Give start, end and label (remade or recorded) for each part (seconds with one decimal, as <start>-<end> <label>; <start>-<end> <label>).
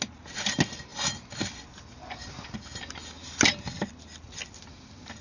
0.0-3.2 recorded; 3.2-3.9 remade; 3.9-5.2 recorded